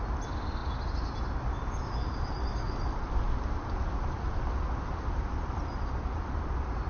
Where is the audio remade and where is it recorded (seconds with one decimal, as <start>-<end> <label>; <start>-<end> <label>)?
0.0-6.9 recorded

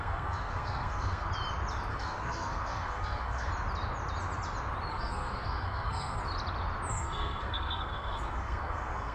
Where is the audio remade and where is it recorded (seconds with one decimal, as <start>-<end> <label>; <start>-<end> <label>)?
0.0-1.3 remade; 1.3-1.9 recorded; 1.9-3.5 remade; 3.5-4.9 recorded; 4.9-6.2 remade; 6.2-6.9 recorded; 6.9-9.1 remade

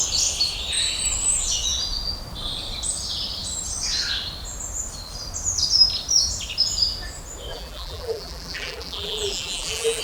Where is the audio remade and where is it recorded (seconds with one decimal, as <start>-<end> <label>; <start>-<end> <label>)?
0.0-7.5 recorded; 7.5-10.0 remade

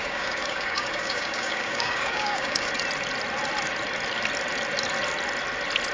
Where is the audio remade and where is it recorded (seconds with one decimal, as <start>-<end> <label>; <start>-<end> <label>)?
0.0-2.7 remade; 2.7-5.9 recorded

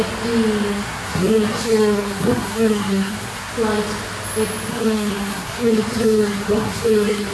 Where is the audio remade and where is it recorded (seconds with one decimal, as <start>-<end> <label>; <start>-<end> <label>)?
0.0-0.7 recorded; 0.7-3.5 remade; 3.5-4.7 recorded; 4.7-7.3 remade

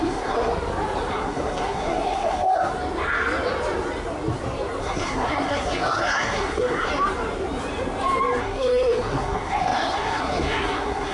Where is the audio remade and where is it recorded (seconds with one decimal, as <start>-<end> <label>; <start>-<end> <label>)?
0.0-0.5 remade; 0.5-1.1 recorded; 1.1-2.7 remade; 2.7-4.8 recorded; 4.8-6.9 remade; 6.9-8.4 recorded; 8.4-11.1 remade

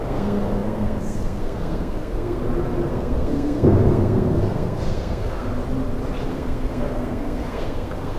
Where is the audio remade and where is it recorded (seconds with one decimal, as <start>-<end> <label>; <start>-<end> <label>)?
0.0-2.4 remade; 2.4-2.9 recorded; 2.9-5.5 remade; 5.5-6.3 recorded; 6.3-8.2 remade